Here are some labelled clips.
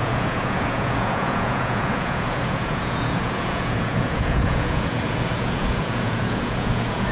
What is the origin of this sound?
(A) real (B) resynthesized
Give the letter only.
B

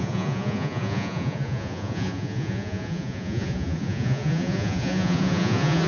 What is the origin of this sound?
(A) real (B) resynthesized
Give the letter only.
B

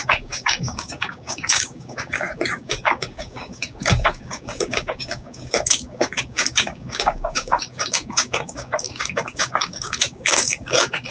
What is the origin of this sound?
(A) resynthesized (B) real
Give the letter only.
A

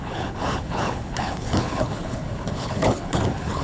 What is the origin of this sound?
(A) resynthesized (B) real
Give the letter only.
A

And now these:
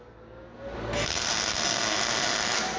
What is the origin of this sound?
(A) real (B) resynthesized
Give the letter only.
A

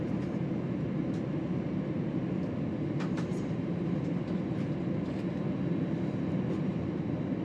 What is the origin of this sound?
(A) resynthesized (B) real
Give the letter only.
B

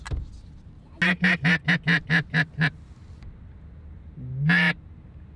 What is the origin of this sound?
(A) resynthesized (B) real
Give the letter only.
B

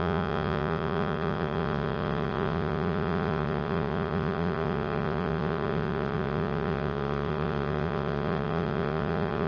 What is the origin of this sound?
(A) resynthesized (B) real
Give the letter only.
A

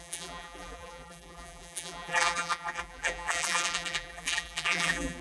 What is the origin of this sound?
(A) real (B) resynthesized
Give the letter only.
B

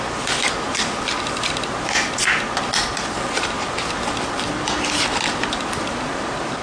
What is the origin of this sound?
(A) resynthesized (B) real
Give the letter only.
B